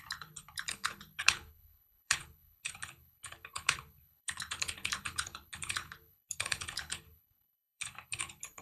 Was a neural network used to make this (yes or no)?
yes